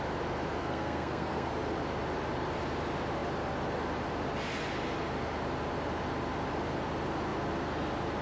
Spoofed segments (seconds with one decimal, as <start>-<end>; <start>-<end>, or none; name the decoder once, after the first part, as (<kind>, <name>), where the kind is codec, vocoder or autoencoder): 0.6-1.5 (codec, SNAC)